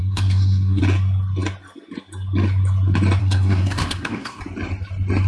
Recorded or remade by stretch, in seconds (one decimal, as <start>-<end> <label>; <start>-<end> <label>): 0.0-0.8 remade; 0.8-3.2 recorded; 3.2-4.4 remade; 4.4-5.3 recorded